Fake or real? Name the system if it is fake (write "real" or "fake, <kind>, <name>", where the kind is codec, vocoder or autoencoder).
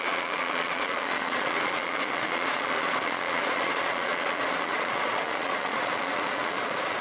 fake, vocoder, Vocos